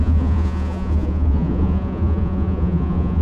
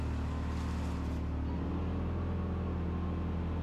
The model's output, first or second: first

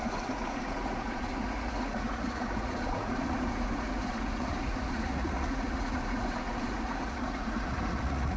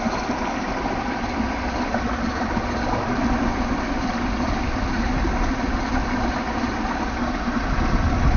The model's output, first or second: first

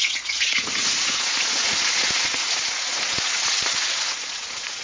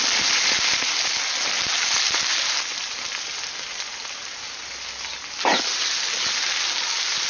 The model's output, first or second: first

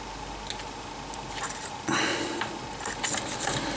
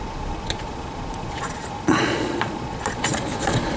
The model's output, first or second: second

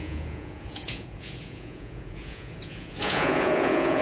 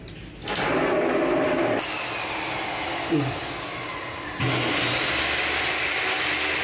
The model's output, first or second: first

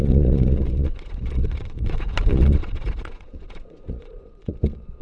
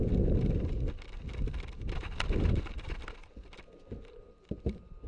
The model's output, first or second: first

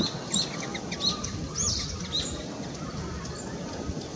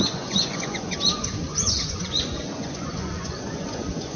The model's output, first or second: second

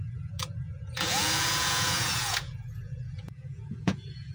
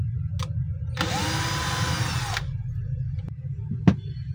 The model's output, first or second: first